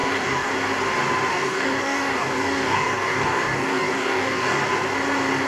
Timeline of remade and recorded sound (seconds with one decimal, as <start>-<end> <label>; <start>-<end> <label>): 0.0-0.5 remade; 0.5-1.3 recorded; 1.3-4.6 remade; 4.6-5.5 recorded